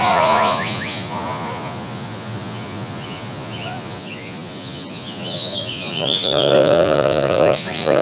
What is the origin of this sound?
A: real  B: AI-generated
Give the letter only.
B